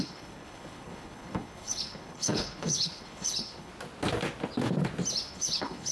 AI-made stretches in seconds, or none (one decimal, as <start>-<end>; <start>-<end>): 0.0-3.7; 5.3-5.9